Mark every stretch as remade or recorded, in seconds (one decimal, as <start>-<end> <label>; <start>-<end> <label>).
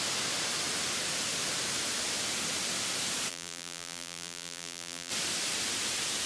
0.0-3.3 recorded; 3.3-5.1 remade; 5.1-6.3 recorded